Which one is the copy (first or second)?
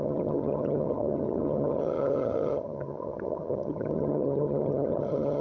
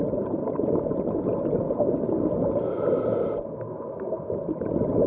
first